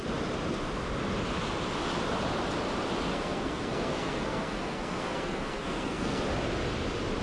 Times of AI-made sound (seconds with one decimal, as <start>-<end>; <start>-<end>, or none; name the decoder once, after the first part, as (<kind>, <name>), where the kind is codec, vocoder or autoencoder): 3.1-6.2 (codec, SNAC)